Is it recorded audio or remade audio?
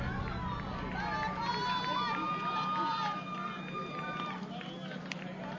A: recorded